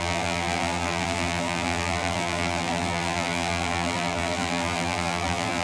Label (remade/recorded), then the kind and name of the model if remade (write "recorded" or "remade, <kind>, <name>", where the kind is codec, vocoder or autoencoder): remade, vocoder, BigVGAN v2